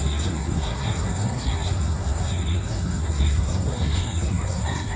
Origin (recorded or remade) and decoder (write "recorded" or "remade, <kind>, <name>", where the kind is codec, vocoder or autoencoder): remade, codec, SNAC